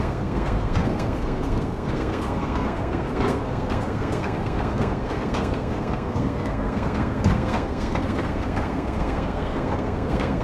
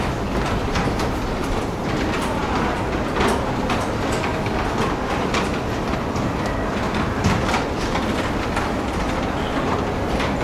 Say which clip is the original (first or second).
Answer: second